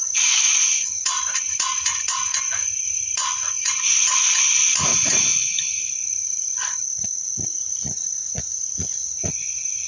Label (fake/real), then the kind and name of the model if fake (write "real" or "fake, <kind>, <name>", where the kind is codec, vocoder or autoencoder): fake, vocoder, Vocos